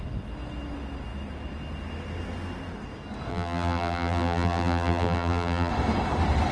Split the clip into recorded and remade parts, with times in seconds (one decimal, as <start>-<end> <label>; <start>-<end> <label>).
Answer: 0.0-3.3 recorded; 3.3-5.7 remade; 5.7-6.5 recorded